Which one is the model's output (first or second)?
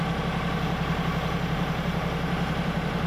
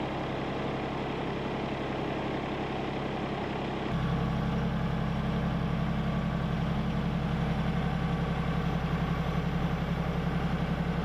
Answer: first